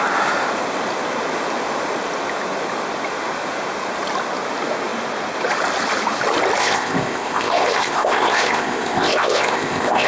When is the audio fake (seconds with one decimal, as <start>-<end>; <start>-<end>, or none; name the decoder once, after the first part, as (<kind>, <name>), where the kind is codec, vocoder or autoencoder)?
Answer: 6.6-10.1 (codec, ZipCodec)